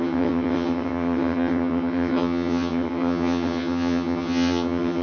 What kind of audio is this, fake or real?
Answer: fake